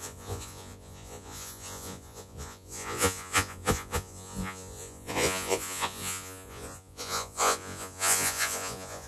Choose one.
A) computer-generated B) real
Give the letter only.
A